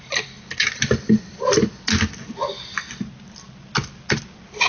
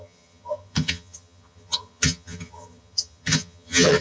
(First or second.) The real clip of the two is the first